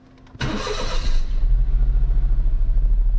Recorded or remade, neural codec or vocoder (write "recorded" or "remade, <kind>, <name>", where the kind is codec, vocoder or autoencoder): recorded